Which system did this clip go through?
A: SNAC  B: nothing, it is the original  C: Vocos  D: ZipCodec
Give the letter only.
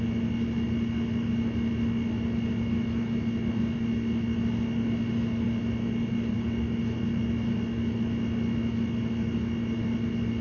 B